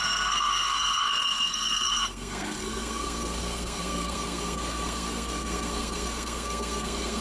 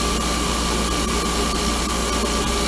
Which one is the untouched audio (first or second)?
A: second